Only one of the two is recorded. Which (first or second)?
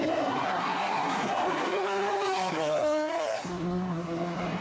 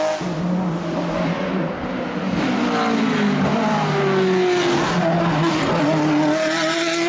second